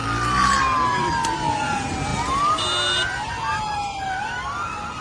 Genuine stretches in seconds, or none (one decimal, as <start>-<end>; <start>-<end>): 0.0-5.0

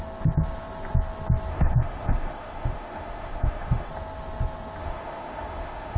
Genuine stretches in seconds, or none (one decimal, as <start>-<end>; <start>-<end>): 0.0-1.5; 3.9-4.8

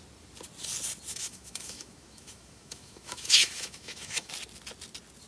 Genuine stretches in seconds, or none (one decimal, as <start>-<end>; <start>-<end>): 0.0-1.1; 4.3-5.3